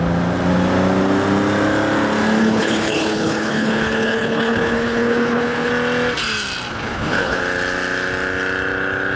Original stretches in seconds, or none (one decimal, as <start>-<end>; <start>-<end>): 0.0-2.4; 5.7-6.7; 7.4-9.2